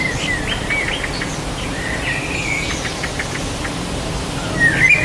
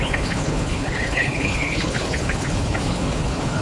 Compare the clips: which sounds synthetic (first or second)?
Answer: second